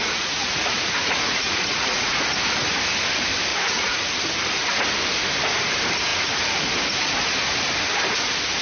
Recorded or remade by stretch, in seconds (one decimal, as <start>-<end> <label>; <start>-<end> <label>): 0.0-2.2 remade; 2.2-3.5 recorded; 3.5-4.1 remade; 4.1-8.6 recorded